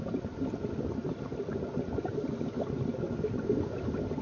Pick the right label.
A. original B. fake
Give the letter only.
A